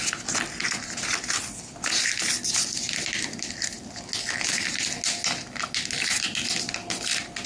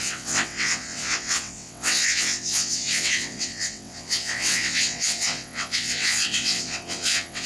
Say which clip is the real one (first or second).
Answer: first